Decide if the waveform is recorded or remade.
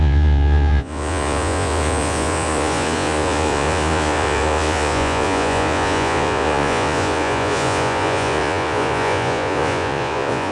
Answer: remade